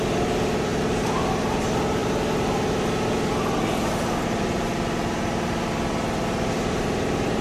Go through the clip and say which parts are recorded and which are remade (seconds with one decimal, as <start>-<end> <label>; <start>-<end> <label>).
0.0-7.4 remade